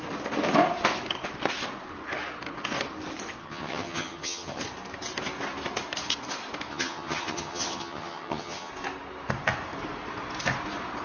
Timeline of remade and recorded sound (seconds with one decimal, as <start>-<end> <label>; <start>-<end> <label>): 0.0-3.4 recorded; 3.4-4.6 remade; 4.6-6.7 recorded; 6.7-8.7 remade; 8.7-11.0 recorded